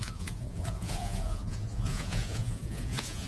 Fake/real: fake